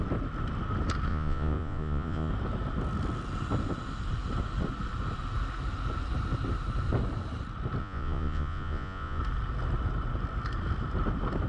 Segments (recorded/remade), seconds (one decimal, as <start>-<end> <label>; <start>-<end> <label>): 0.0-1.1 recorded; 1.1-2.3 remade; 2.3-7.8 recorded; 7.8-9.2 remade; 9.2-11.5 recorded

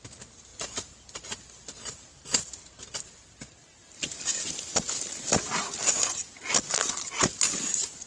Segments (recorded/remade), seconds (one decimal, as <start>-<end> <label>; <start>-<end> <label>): 0.0-8.1 recorded

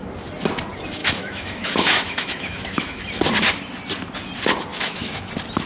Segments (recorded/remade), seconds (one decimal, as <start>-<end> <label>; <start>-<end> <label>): 0.0-1.0 recorded; 1.0-3.0 remade; 3.0-4.7 recorded; 4.7-5.3 remade; 5.3-5.7 recorded

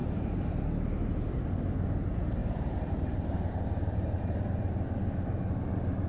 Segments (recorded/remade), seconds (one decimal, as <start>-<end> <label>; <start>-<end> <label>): 0.0-0.6 remade; 0.6-2.4 recorded; 2.4-4.5 remade; 4.5-6.1 recorded

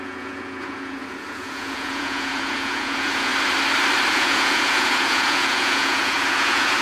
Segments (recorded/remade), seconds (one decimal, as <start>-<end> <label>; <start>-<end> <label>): 0.0-3.3 remade; 3.3-4.1 recorded; 4.1-6.8 remade